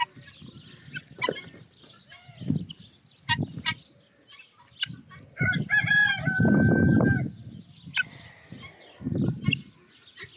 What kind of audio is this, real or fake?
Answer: real